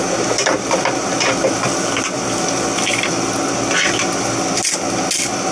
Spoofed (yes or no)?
yes